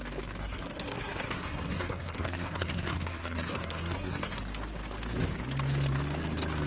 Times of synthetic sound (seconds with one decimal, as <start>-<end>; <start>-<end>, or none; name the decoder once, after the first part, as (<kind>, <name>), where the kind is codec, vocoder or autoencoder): 0.4-4.4 (codec, SNAC)